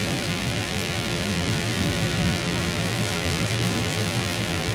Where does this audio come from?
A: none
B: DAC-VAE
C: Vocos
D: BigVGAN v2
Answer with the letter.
D